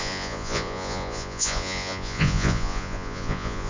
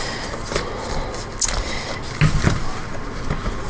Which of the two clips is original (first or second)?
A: second